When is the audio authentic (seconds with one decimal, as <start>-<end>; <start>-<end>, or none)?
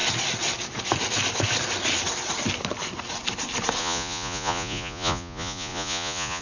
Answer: 0.0-3.8